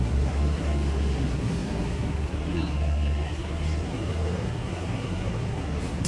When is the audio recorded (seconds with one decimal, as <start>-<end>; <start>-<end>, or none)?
none